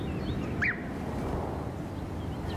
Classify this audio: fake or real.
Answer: real